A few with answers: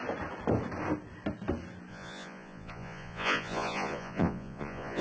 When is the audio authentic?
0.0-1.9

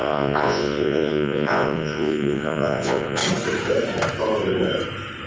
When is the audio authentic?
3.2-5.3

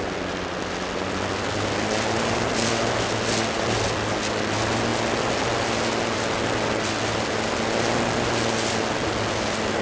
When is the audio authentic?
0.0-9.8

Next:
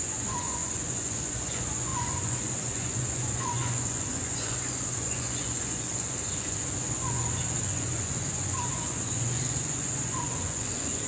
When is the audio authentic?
none

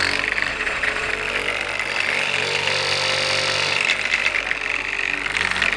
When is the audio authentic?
0.0-0.5; 1.1-5.8

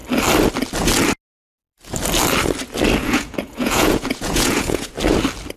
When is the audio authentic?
0.0-3.0; 4.9-5.6